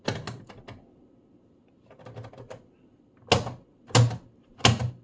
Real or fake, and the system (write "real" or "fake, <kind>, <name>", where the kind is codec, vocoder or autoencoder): real